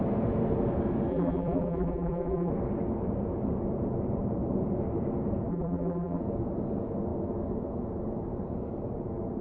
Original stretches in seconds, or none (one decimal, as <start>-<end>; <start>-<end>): 0.0-1.1; 2.5-5.5; 6.2-9.4